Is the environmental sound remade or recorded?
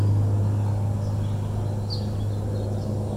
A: recorded